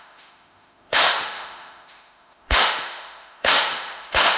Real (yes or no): no